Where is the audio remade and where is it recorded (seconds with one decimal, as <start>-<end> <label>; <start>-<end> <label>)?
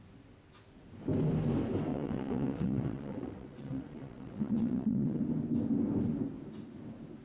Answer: 0.0-1.9 recorded; 1.9-5.2 remade; 5.2-7.2 recorded